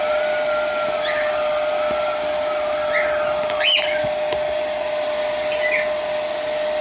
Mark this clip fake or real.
real